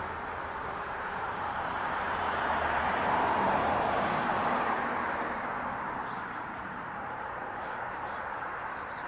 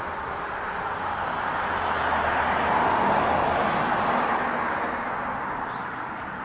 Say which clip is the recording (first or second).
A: second